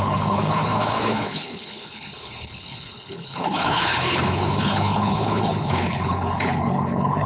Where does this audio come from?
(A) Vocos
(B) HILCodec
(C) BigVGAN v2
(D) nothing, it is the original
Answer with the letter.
B